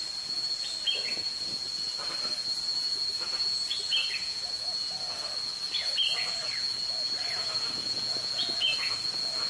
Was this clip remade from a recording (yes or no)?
no